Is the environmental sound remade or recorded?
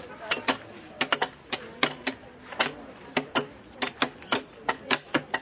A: recorded